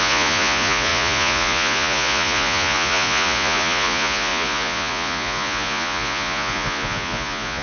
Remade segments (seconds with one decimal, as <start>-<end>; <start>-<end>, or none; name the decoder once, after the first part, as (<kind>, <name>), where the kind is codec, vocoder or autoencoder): 0.0-7.6 (vocoder, Vocos)